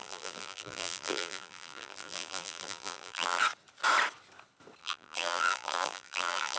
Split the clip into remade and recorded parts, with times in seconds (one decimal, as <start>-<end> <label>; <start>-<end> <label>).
0.0-3.4 remade; 3.4-4.8 recorded; 4.8-6.6 remade